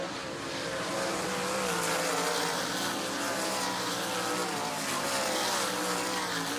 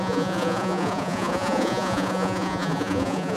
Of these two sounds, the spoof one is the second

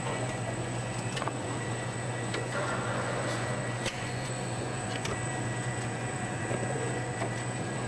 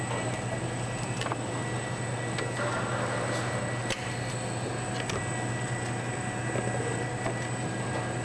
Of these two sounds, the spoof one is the first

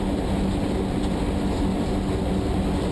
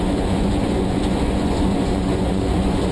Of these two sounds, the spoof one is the second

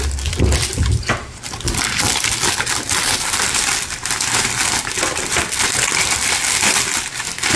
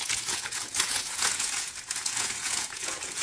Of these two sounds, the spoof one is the second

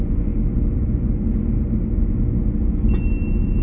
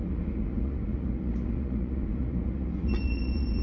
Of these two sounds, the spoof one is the second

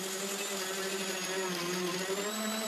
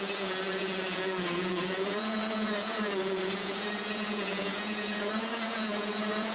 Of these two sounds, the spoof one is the second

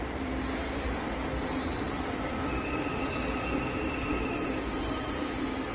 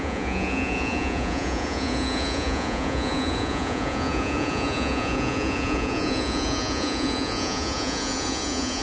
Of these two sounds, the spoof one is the second